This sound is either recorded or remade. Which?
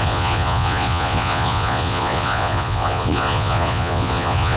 remade